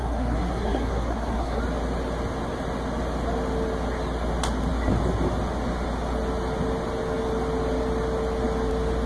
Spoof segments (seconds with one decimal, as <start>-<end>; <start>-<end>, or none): 0.0-1.6